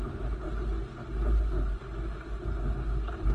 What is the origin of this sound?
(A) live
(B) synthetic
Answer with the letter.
A